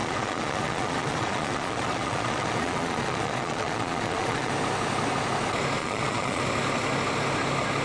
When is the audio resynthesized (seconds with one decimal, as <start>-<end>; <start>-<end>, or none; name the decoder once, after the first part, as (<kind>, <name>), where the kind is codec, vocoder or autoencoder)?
0.0-4.5 (vocoder, Vocos); 5.8-6.4